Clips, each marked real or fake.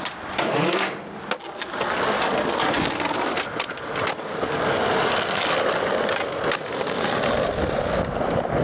real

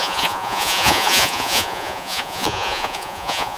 fake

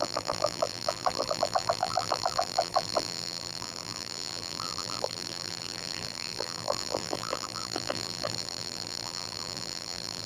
fake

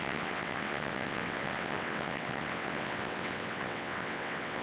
fake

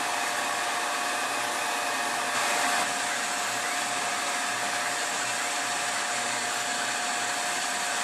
real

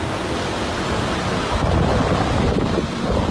real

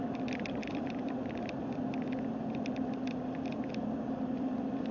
fake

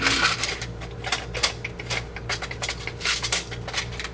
real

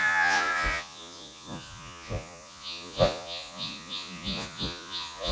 fake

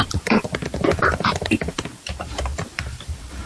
fake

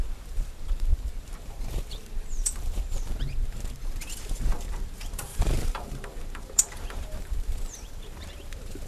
fake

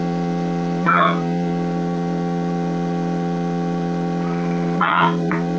fake